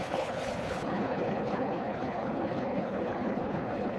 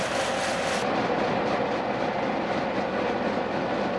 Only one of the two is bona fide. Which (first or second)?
second